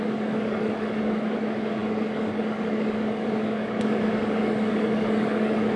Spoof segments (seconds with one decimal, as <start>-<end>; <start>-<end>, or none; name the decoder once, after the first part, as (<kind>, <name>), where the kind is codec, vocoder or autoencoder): 0.0-5.8 (codec, DAC)